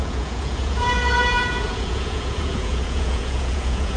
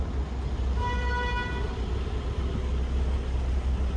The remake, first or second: first